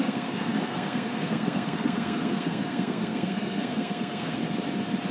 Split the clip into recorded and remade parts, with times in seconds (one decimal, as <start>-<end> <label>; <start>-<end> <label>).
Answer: 0.0-4.4 remade; 4.4-5.1 recorded